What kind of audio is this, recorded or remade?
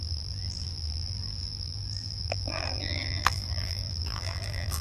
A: remade